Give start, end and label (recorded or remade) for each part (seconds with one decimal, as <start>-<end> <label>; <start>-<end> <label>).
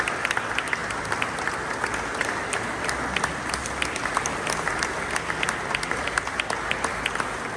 0.0-7.6 recorded